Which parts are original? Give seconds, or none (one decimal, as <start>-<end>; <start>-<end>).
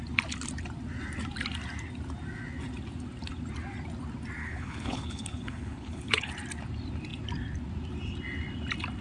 0.0-4.4; 6.3-9.0